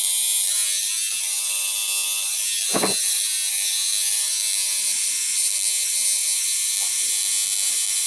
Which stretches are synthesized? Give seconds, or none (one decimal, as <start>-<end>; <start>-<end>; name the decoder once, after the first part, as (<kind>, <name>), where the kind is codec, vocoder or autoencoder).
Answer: none